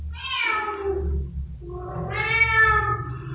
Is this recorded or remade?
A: recorded